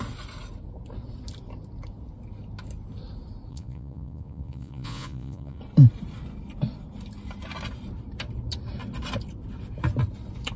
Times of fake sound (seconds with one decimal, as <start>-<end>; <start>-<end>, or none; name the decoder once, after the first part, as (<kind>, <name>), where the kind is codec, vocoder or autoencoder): 3.5-5.6 (vocoder, Vocos)